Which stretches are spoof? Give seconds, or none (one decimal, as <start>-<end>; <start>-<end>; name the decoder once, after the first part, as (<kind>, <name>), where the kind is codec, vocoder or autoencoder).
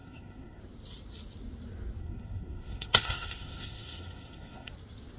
0.0-0.6 (codec, SNAC); 2.0-4.7